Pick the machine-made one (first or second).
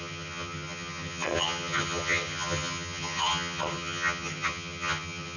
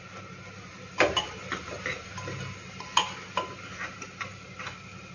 first